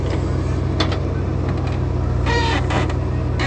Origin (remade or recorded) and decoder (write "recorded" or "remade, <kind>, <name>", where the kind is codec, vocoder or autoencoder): recorded